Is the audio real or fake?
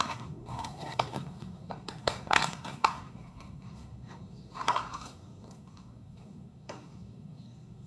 fake